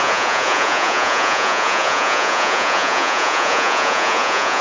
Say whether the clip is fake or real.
fake